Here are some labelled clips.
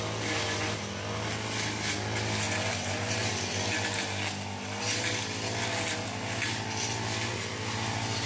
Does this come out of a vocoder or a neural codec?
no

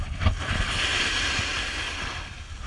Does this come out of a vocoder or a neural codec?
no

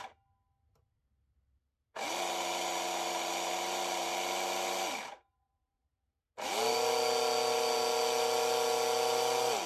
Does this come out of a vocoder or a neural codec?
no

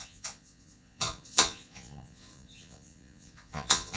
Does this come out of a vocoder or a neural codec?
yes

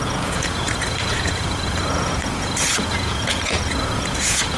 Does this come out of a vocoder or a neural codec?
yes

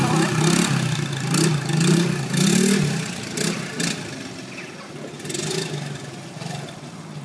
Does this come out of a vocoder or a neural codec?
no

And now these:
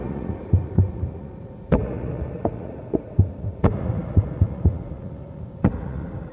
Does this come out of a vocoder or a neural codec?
yes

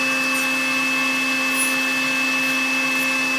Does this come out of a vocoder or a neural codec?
no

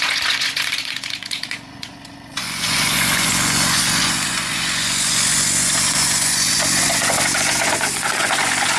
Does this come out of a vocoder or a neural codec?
yes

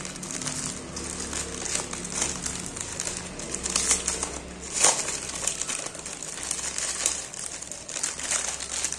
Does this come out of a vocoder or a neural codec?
no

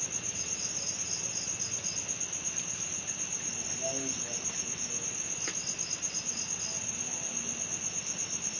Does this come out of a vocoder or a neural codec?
no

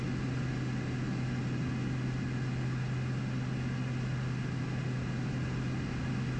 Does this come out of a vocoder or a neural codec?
no